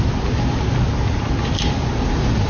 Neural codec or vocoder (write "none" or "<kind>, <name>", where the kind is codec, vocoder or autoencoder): none